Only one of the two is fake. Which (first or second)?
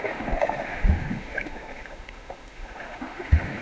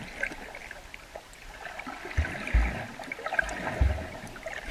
first